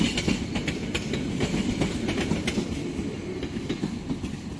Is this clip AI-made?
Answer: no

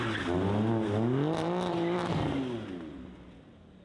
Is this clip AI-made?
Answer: no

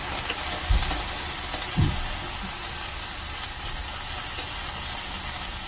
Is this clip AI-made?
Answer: no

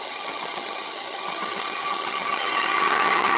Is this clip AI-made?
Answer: yes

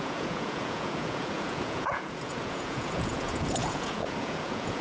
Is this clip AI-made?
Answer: yes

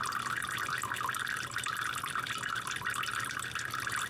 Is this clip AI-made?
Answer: yes